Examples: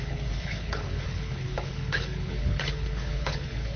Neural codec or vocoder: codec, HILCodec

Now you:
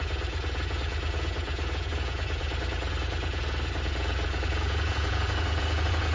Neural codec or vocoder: vocoder, Vocos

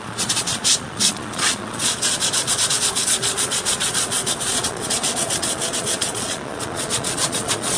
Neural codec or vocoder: vocoder, Vocos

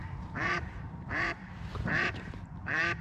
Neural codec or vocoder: vocoder, BigVGAN v2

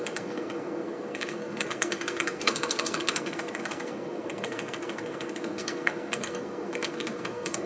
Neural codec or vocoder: codec, SNAC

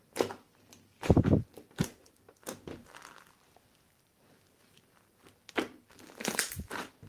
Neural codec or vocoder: vocoder, BigVGAN v2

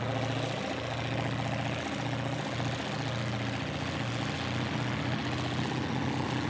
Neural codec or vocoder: none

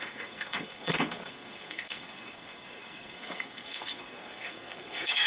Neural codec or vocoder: codec, SNAC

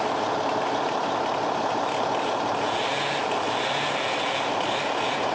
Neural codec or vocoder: none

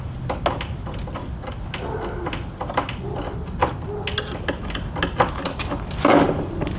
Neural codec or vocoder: none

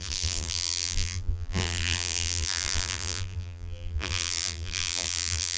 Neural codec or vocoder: vocoder, BigVGAN v2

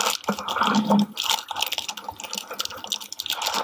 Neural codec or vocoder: none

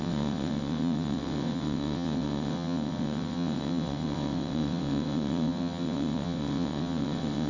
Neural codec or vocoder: vocoder, WaveNeXt